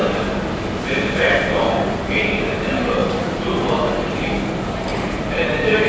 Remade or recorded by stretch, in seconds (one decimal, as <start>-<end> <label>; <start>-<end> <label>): 0.0-3.0 recorded; 3.0-3.9 remade; 3.9-4.9 recorded; 4.9-5.5 remade; 5.5-5.9 recorded